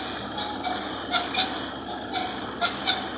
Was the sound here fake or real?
fake